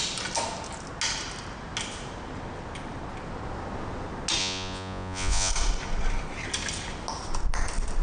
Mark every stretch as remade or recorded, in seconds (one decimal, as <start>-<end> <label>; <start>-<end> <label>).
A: 0.0-4.4 recorded; 4.4-5.5 remade; 5.5-8.0 recorded